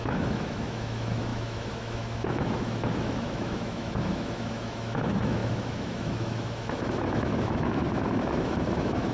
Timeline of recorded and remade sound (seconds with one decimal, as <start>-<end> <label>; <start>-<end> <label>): 0.0-9.1 remade